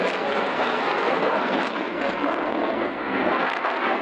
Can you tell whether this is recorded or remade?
remade